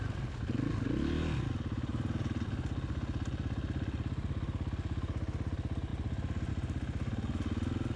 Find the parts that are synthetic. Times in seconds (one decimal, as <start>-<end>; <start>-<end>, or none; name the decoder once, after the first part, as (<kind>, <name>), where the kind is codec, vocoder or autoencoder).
none